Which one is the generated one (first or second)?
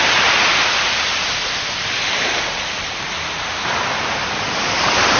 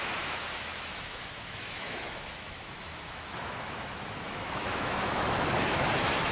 second